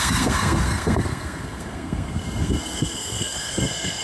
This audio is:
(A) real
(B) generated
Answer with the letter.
B